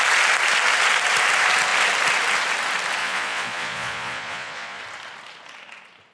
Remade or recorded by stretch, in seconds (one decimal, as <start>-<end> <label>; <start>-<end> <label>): 0.0-3.0 recorded; 3.0-4.8 remade; 4.8-6.1 recorded